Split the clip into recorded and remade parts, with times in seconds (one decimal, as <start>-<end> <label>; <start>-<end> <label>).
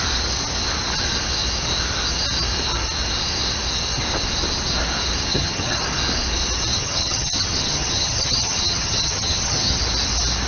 0.0-5.3 recorded; 5.3-5.8 remade; 5.8-6.7 recorded; 6.7-9.8 remade; 9.8-10.5 recorded